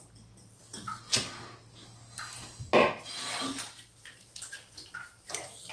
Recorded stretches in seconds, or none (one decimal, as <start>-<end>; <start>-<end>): 0.0-5.7